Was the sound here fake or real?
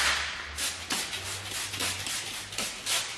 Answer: real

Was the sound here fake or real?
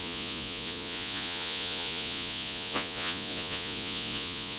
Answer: fake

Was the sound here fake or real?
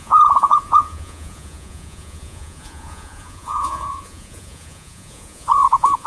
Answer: fake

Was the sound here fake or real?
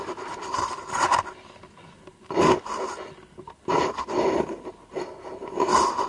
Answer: real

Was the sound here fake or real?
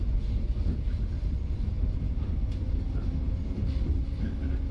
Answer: real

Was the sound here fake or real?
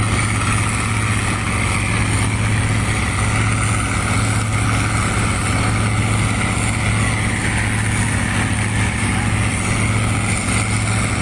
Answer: real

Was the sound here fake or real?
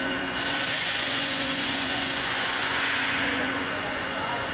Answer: fake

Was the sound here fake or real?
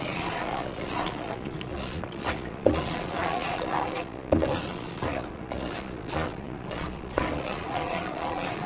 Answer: fake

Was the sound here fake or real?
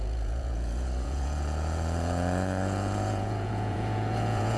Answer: fake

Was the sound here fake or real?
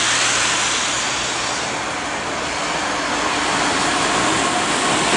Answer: real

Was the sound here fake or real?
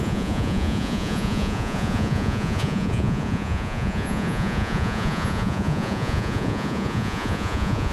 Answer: fake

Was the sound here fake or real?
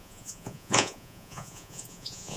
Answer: fake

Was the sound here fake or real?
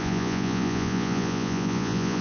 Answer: fake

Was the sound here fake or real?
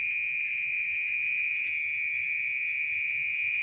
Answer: fake